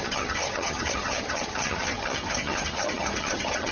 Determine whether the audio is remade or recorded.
remade